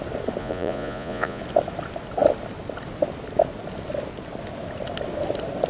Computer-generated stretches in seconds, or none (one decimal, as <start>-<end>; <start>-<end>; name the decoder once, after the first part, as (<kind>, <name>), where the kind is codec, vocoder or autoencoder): 0.4-1.4 (vocoder, Vocos)